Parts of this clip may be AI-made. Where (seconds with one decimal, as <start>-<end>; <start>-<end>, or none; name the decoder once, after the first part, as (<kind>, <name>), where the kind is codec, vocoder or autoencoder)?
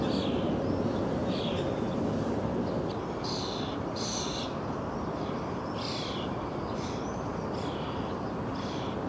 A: 1.2-2.0 (vocoder, BigVGAN v2)